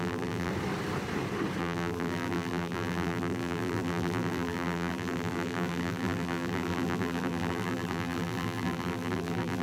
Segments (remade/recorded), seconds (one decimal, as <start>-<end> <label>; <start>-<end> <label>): 0.0-0.5 remade; 0.5-1.6 recorded; 1.6-9.6 remade